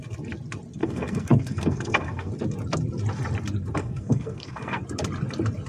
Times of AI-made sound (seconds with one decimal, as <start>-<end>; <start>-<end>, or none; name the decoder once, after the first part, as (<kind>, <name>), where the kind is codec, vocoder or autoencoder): 0.8-2.3 (codec, SNAC); 3.8-4.8